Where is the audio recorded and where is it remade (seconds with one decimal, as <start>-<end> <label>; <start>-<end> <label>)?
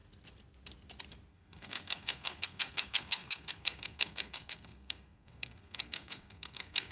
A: 0.0-1.3 recorded; 1.3-6.9 remade